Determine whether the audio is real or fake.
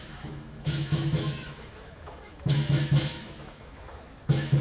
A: fake